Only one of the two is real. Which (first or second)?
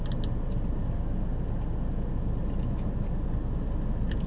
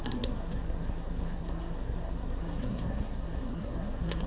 first